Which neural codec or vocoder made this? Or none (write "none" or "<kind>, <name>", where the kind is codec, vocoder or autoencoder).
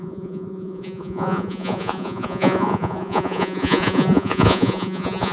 vocoder, Vocos